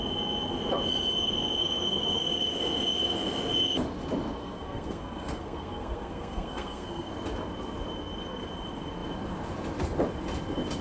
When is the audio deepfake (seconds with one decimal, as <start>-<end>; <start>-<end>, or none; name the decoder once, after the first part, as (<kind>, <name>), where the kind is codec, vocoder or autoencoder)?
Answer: 1.6-2.3 (codec, SNAC); 4.4-7.1